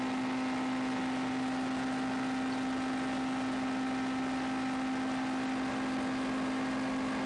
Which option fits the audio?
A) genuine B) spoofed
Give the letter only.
A